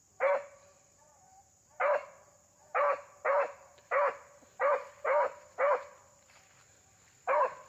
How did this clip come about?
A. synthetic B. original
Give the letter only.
B